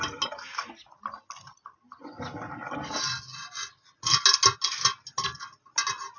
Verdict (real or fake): real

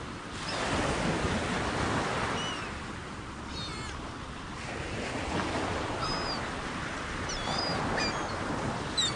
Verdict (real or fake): real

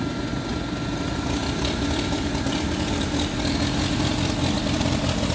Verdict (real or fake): real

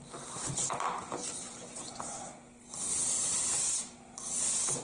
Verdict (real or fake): real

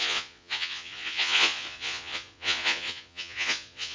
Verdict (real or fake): fake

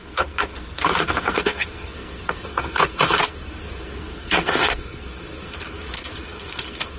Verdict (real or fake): fake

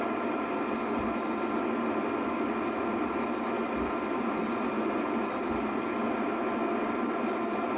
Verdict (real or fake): real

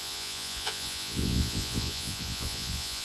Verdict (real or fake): fake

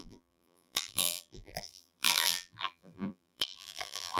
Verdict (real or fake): fake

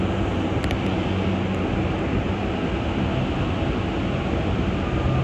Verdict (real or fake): real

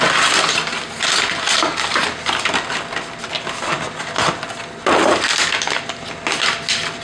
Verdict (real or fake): real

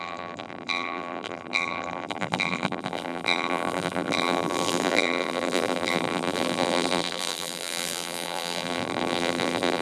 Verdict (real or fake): fake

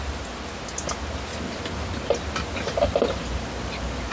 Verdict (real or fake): real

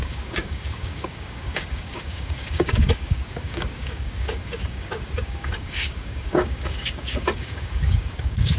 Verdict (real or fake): fake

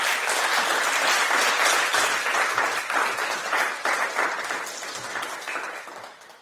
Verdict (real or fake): real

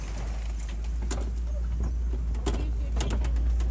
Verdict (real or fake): real